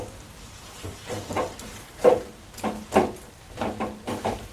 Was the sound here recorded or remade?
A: recorded